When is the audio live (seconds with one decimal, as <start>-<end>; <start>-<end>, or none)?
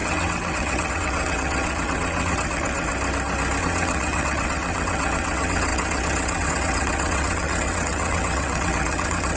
2.9-3.6